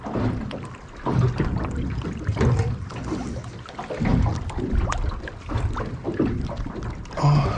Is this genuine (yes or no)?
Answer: yes